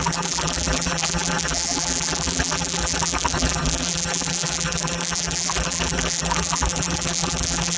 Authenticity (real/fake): fake